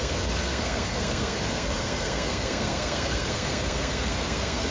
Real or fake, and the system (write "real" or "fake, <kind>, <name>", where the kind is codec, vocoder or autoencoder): fake, codec, SNAC